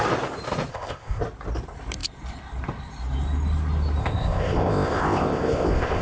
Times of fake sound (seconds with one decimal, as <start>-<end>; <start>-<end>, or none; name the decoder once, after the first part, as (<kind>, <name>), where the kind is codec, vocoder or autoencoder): 0.7-1.2 (codec, ZipCodec); 4.0-6.0